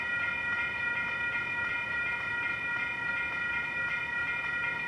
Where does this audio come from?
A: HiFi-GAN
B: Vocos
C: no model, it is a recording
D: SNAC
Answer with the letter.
C